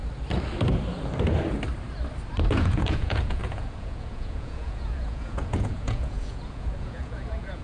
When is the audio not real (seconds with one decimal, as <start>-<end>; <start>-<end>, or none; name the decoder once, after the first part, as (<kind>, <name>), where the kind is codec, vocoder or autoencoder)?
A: 2.5-7.6 (vocoder, Vocos)